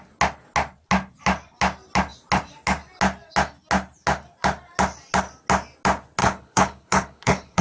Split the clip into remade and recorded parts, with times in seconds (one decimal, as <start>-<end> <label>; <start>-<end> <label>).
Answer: 0.0-6.2 recorded; 6.2-7.6 remade